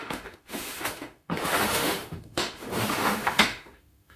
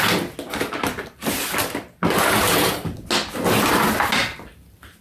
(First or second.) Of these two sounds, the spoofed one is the first